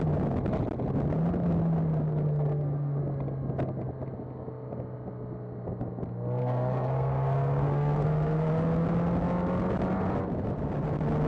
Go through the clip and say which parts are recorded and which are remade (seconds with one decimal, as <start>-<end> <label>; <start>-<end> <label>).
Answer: 0.0-2.0 recorded; 2.0-3.0 remade; 3.0-6.4 recorded; 6.4-8.5 remade; 8.5-11.3 recorded